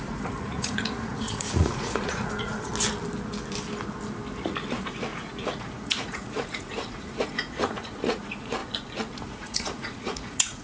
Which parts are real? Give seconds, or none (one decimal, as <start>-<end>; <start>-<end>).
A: 2.7-4.4; 8.6-9.2